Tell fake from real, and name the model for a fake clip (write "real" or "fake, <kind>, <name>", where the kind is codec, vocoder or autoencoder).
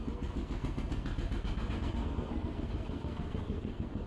fake, codec, SNAC